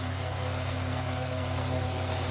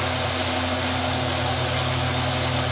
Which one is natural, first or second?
second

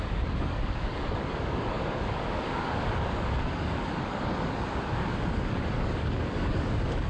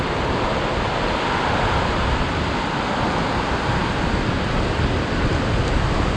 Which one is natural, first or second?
second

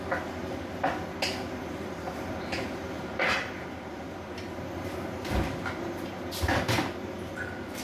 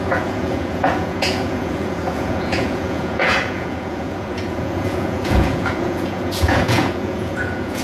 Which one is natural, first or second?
first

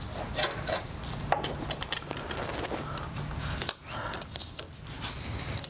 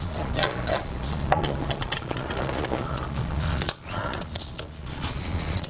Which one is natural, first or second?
first